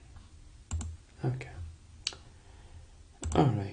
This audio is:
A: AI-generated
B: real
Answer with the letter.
B